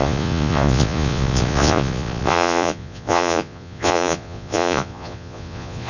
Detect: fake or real fake